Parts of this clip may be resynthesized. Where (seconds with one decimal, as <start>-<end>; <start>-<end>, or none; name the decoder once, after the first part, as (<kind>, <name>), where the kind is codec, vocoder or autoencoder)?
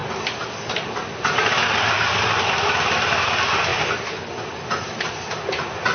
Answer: none